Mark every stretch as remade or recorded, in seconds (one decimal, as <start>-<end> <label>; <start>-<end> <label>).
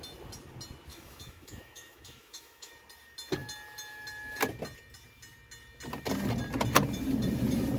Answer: 0.0-0.9 recorded; 0.9-2.7 remade; 2.7-7.8 recorded